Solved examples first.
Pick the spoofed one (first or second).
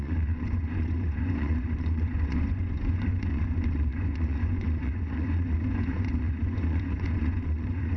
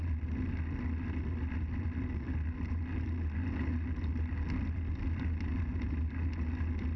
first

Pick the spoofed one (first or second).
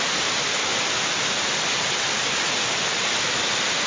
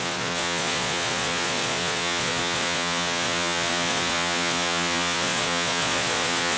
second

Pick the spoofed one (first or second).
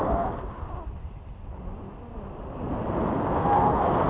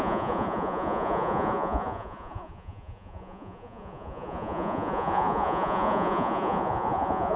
second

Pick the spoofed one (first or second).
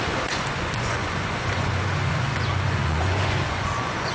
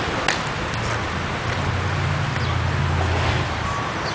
first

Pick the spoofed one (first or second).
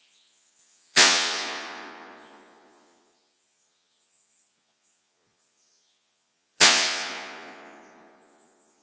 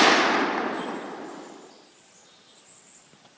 first